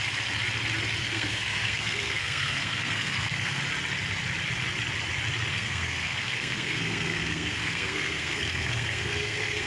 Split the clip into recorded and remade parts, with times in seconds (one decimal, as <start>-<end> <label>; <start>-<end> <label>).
0.0-1.0 recorded; 1.0-3.6 remade; 3.6-5.5 recorded; 5.5-9.7 remade

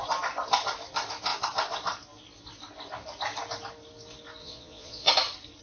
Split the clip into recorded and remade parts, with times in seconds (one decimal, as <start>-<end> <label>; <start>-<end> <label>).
0.0-4.4 recorded; 4.4-5.1 remade; 5.1-5.6 recorded

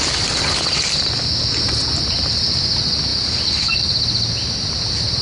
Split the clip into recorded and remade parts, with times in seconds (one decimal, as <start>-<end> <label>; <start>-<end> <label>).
0.0-5.2 recorded

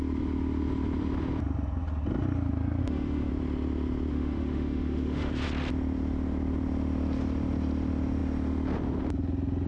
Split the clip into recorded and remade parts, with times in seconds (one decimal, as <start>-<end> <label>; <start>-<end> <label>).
0.0-2.8 recorded; 2.8-3.3 remade; 3.3-4.1 recorded; 4.1-5.3 remade; 5.3-9.7 recorded

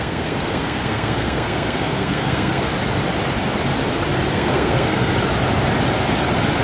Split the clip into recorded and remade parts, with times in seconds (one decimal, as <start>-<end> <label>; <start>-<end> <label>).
0.0-2.7 remade; 2.7-4.3 recorded; 4.3-5.1 remade; 5.1-6.6 recorded

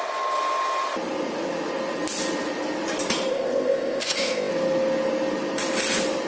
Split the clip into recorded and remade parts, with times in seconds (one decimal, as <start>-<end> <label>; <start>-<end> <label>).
0.0-3.3 recorded; 3.3-4.5 remade; 4.5-6.3 recorded

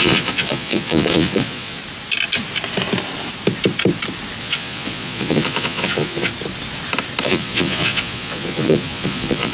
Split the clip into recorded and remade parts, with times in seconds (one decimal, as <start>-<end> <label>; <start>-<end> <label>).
0.0-1.8 remade; 1.8-4.4 recorded; 4.4-6.3 remade; 6.3-7.2 recorded; 7.2-9.5 remade